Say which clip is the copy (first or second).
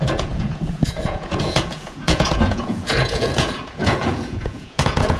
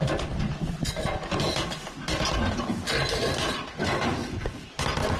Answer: first